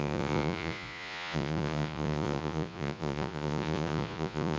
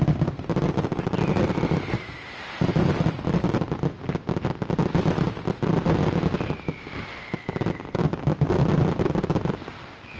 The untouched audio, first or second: second